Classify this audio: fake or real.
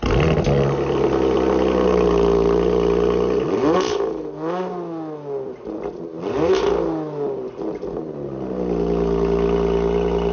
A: real